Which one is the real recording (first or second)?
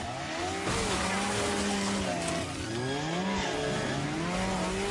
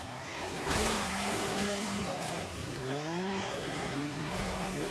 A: first